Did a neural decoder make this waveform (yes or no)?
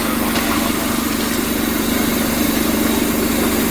no